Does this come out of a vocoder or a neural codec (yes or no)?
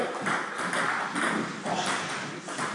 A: no